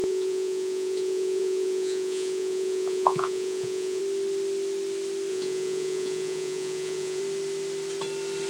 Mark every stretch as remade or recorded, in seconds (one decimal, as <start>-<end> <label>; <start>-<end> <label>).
0.0-4.0 remade; 4.0-5.3 recorded; 5.3-7.2 remade; 7.2-8.5 recorded